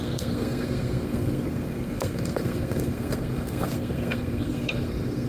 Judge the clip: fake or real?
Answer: fake